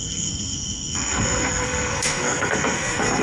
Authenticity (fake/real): fake